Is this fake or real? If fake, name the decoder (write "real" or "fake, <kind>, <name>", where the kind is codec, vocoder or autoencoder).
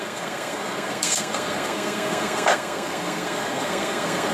fake, codec, SNAC